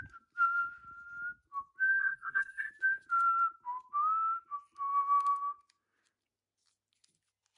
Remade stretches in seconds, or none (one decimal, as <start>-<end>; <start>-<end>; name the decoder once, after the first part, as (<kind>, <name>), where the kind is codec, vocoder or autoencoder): 2.0-2.7 (codec, SNAC)